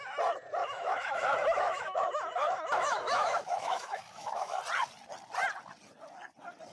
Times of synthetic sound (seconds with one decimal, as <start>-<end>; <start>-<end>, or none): 0.6-4.6